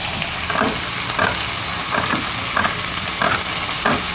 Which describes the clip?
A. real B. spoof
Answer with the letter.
A